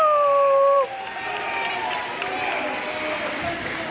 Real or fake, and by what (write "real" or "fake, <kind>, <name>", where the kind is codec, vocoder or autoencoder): real